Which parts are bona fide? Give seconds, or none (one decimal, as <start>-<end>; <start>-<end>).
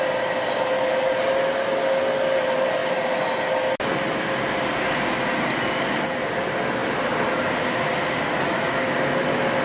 0.0-9.6